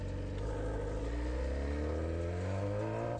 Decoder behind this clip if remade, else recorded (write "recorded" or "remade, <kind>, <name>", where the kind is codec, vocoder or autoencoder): recorded